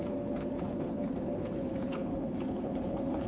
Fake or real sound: fake